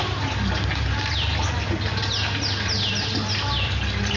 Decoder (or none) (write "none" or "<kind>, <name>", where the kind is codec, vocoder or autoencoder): none